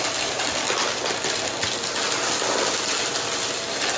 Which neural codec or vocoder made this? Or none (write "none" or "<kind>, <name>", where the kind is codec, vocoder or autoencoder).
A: none